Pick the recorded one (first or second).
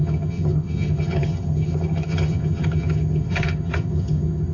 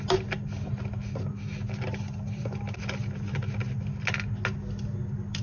second